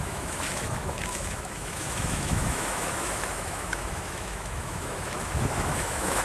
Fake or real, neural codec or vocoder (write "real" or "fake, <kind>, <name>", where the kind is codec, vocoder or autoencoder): fake, autoencoder, DAC-VAE